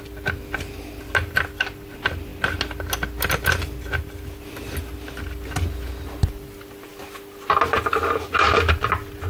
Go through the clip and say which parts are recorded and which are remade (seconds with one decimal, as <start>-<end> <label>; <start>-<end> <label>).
0.0-9.3 recorded